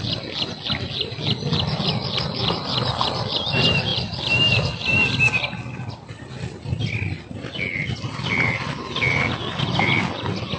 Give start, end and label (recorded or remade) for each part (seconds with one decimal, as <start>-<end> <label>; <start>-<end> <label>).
0.0-10.6 recorded